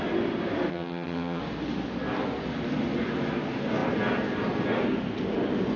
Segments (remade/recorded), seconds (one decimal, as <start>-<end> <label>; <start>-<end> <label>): 0.0-0.7 recorded; 0.7-1.4 remade; 1.4-5.8 recorded